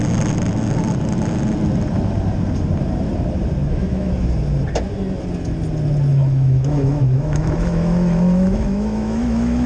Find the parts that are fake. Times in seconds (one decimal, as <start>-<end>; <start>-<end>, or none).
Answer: 3.6-4.1; 6.1-9.7